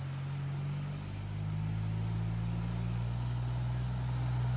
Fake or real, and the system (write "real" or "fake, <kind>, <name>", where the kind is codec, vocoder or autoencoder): real